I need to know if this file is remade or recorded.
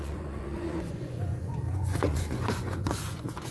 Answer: remade